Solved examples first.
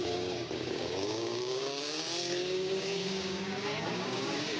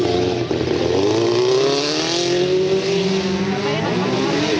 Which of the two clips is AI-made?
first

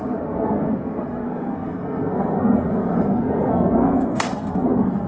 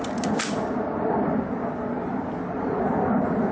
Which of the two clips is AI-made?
first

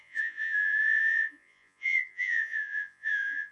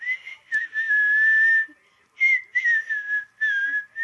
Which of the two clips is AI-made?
first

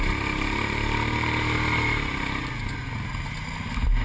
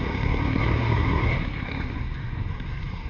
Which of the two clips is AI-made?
second